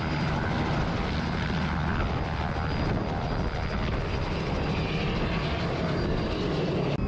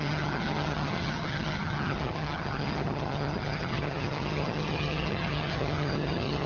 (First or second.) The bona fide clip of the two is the first